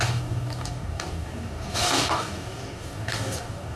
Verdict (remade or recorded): remade